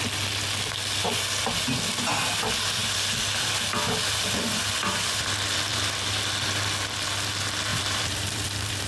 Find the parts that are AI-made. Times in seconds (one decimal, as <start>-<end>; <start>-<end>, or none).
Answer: 5.7-6.2; 7.7-8.9